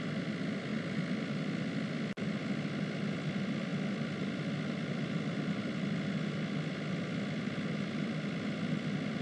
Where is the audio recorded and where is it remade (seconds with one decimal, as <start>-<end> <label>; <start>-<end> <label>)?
0.0-9.2 recorded